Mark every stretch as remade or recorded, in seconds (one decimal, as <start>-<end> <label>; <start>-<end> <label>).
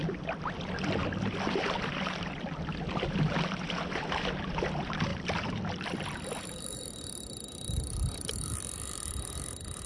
0.0-5.1 recorded; 5.1-7.7 remade; 7.7-9.9 recorded